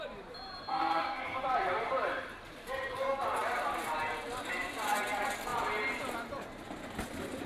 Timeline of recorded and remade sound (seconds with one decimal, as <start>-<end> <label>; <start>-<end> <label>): 0.0-0.7 recorded; 0.7-1.4 remade; 1.4-7.5 recorded